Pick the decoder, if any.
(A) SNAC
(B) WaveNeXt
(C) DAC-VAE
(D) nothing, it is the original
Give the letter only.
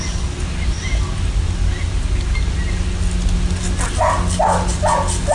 D